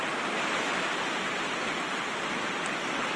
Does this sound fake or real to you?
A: real